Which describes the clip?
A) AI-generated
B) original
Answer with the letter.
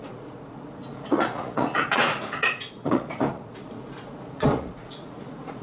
A